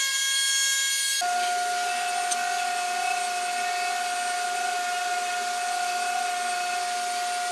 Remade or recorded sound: recorded